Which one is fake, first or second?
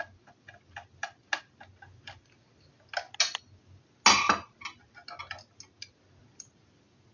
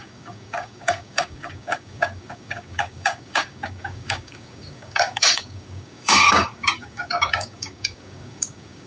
second